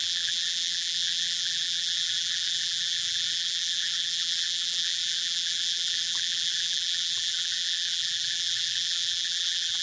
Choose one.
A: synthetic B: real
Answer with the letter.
A